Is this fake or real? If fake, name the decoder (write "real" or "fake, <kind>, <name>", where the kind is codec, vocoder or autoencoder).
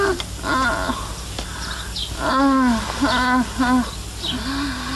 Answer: real